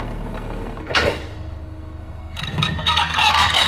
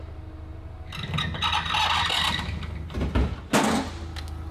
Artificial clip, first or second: first